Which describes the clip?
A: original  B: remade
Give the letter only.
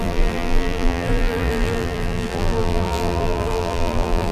B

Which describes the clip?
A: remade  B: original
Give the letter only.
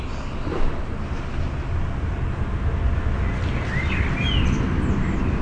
B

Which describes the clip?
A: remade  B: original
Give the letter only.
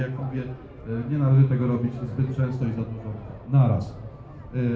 B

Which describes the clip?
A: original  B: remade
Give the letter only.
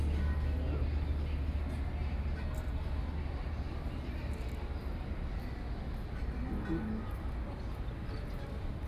A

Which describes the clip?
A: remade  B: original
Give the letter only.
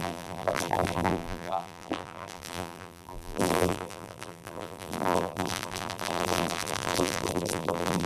A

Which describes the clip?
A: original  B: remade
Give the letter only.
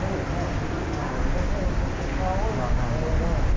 A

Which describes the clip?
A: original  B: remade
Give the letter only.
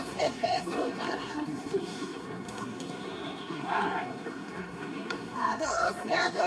B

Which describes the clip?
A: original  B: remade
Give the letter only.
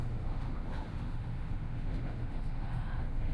B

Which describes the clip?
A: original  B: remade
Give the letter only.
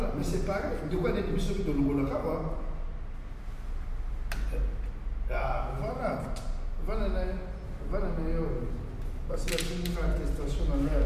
A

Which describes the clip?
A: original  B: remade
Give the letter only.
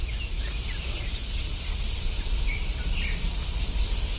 A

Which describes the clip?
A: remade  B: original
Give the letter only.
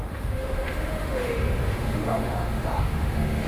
A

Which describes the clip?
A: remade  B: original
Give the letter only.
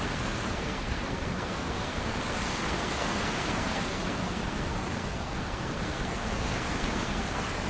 A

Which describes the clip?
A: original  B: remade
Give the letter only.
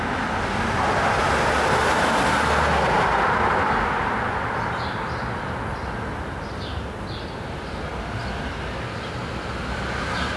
A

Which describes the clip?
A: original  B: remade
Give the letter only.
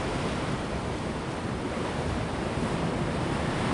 A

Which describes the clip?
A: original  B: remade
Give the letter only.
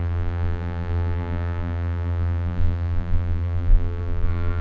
B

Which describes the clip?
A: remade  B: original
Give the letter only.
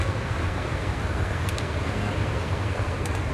A